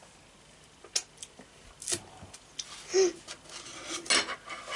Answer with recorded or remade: recorded